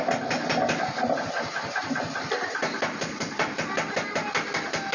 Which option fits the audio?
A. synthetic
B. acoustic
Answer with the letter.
B